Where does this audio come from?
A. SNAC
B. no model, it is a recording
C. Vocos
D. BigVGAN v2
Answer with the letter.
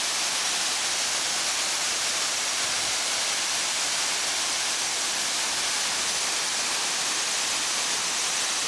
B